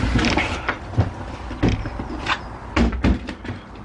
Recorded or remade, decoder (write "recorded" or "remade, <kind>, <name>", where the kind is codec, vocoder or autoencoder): recorded